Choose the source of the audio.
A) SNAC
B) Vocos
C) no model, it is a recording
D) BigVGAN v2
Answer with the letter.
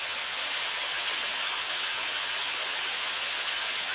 B